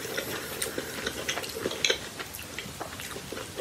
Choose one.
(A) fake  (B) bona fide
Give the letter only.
B